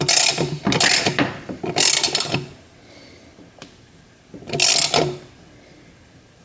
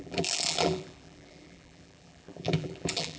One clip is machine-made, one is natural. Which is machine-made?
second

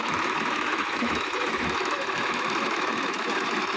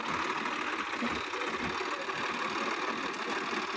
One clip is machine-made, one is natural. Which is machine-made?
first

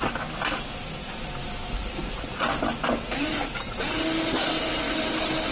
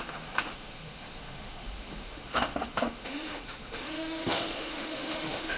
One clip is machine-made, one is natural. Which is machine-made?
second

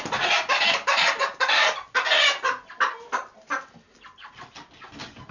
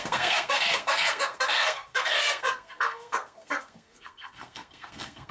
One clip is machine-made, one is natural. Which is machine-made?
second